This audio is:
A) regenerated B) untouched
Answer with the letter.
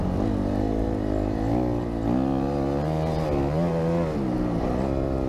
B